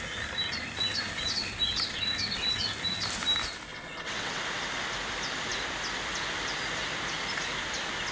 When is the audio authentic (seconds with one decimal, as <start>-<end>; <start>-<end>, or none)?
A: 0.0-3.7; 4.4-8.1